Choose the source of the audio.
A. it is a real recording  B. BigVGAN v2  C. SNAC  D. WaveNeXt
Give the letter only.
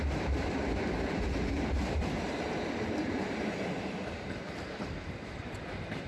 B